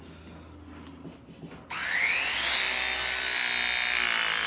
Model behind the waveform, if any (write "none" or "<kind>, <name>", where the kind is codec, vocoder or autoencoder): none